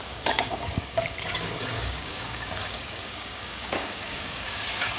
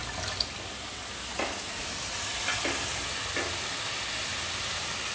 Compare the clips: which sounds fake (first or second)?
first